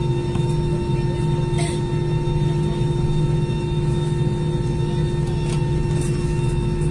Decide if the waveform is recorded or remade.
recorded